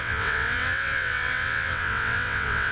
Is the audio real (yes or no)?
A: no